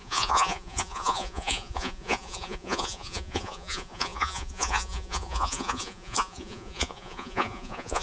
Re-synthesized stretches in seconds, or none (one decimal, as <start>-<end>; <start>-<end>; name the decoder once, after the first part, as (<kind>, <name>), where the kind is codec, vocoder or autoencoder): 0.0-8.0 (vocoder, Vocos)